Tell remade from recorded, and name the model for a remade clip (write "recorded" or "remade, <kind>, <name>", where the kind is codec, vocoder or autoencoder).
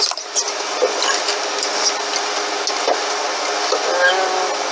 recorded